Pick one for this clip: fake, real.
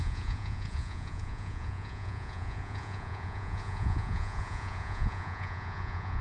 fake